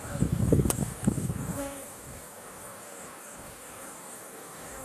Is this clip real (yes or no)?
no